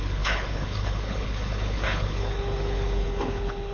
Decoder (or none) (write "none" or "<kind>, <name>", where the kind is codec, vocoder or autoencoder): codec, HILCodec